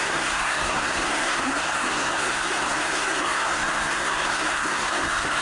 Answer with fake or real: fake